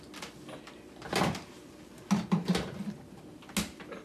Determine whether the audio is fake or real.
real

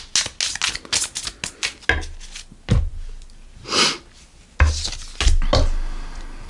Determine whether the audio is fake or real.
real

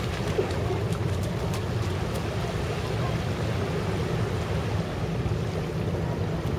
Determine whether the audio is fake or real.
real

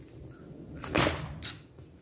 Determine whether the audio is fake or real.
real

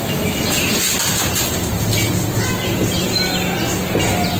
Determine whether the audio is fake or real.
real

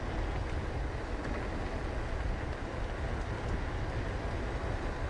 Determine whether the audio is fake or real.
real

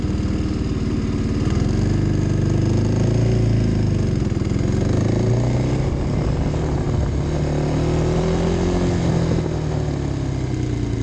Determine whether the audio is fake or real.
real